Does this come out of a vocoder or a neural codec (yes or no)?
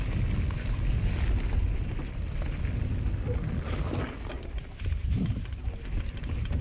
no